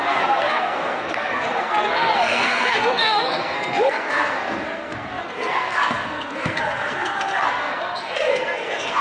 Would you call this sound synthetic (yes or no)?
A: yes